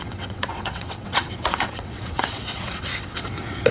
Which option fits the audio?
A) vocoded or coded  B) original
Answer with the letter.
A